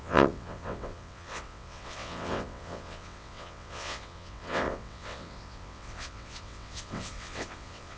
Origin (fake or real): fake